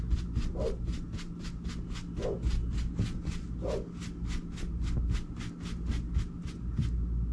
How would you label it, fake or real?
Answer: real